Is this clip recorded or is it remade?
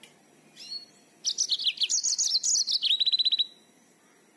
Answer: recorded